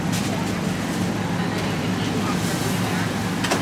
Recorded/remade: recorded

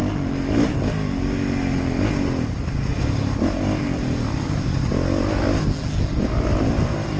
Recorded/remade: recorded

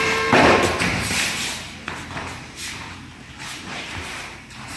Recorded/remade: remade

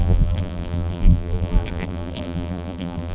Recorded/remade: remade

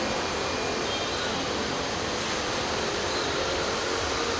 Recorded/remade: recorded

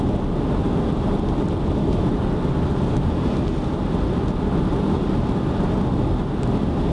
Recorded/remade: recorded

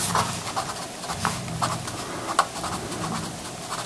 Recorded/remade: remade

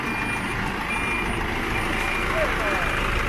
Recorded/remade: recorded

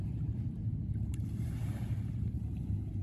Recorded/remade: remade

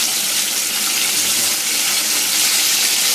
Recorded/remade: recorded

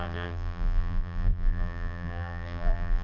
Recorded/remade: remade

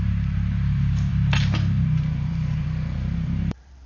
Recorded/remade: remade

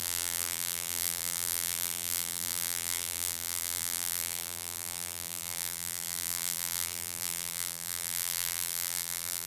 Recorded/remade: remade